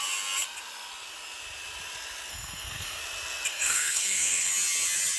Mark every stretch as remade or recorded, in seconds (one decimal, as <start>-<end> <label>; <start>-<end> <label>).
0.0-2.3 recorded; 2.3-3.0 remade; 3.0-3.5 recorded; 3.5-4.5 remade; 4.5-5.2 recorded